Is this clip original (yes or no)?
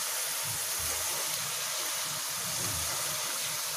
yes